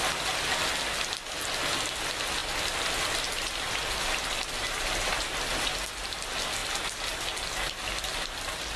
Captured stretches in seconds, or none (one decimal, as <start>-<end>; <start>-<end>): 0.0-8.8